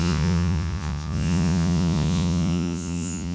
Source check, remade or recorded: remade